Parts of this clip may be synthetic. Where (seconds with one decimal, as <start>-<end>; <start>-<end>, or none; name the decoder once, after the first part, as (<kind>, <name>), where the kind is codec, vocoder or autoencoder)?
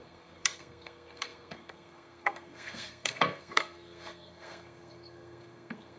0.0-6.0 (codec, SNAC)